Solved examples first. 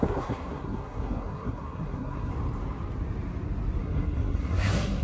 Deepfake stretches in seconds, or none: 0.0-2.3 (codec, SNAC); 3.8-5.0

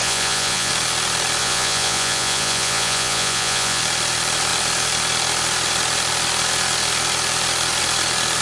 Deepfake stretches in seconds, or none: 0.0-0.7 (vocoder, Vocos); 1.4-3.8

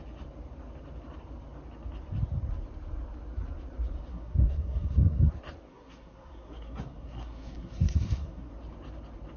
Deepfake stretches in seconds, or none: 4.1-5.3 (codec, SNAC); 5.7-8.5

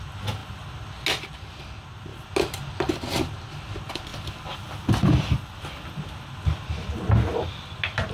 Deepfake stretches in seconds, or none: none